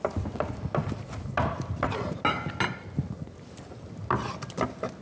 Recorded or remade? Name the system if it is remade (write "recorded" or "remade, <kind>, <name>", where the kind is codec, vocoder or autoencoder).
recorded